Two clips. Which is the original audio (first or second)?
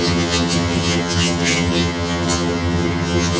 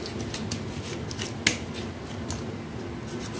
second